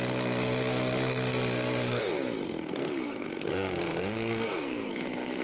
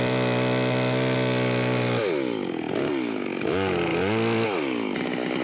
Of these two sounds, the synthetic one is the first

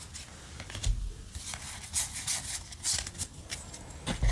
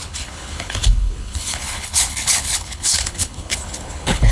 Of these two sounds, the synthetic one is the second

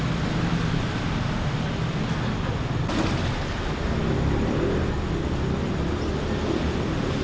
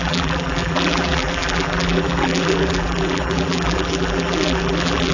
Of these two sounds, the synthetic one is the second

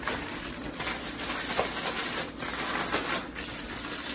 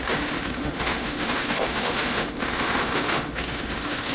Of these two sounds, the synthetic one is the second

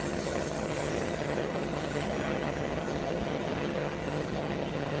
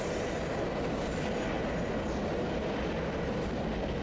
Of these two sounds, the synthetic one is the first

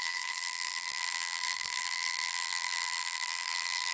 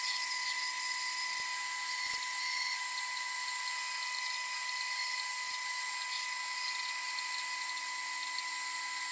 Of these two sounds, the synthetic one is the first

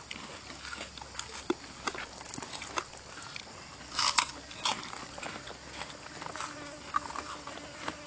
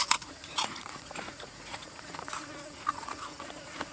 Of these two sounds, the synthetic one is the second